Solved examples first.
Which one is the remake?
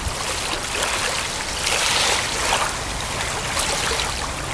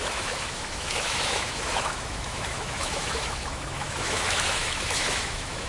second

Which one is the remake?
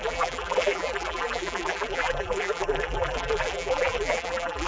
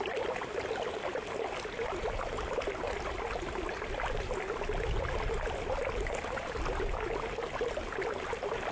first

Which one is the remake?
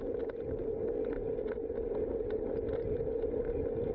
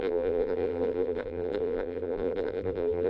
second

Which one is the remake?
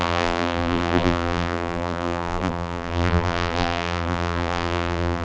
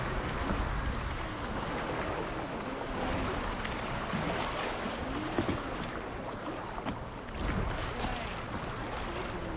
first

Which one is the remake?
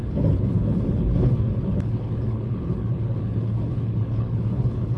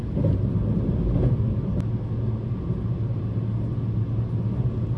first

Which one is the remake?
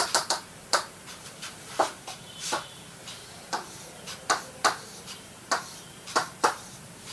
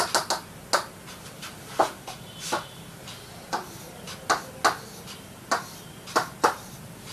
first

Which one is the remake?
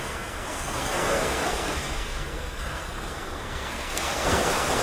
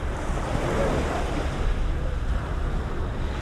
first